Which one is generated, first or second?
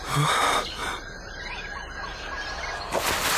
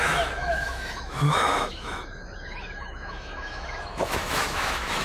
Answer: second